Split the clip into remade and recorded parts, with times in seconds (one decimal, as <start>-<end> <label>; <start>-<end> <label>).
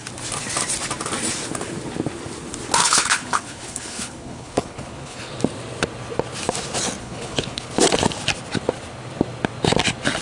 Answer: 0.0-2.8 recorded; 2.8-5.3 remade; 5.3-7.0 recorded; 7.0-7.7 remade; 7.7-10.2 recorded